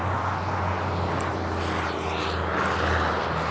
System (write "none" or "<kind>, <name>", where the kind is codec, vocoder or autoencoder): none